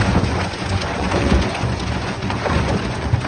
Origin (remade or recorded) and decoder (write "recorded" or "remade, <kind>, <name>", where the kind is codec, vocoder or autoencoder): remade, vocoder, Vocos